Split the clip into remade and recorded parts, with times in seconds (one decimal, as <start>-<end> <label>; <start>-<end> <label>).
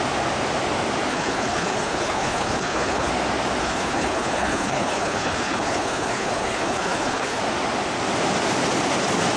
0.0-1.1 recorded; 1.1-3.1 remade; 3.1-3.6 recorded; 3.6-7.4 remade; 7.4-9.4 recorded